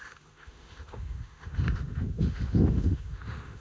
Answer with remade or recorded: remade